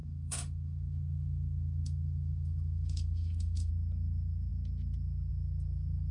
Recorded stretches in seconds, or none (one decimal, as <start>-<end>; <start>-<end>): 3.7-6.1